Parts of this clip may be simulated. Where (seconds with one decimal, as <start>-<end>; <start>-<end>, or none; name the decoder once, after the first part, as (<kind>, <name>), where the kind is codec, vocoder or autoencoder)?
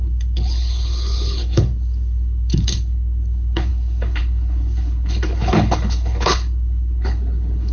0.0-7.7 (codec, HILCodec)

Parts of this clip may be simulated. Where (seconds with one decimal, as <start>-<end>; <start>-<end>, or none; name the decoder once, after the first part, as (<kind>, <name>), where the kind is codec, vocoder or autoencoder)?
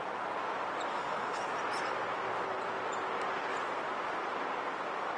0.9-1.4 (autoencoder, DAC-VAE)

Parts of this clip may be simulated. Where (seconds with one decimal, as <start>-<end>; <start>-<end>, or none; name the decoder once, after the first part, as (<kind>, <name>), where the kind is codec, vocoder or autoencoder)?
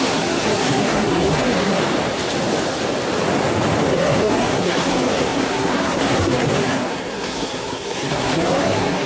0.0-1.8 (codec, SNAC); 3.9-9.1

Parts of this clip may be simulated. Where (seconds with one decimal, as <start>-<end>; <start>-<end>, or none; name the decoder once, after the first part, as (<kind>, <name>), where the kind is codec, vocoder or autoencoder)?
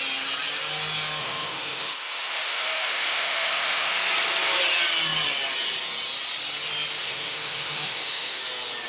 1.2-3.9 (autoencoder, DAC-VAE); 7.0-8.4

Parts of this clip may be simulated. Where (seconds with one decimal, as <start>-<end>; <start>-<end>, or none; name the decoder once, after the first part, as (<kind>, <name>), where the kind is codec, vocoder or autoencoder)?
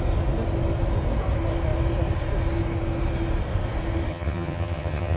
4.1-5.2 (vocoder, HiFi-GAN)